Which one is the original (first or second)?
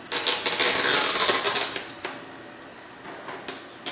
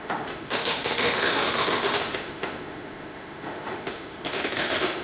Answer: first